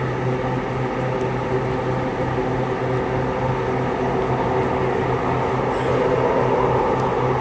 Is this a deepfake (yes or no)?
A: no